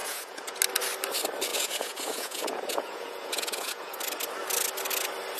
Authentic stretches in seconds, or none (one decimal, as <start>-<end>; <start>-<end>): 0.6-1.5; 4.0-5.4